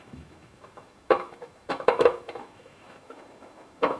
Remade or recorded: remade